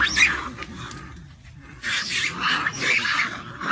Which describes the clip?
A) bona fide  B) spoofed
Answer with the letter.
A